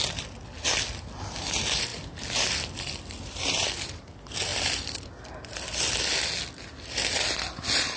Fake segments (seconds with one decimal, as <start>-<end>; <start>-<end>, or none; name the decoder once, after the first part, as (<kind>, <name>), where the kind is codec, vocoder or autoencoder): 1.9-4.0 (vocoder, BigVGAN v2); 4.5-5.8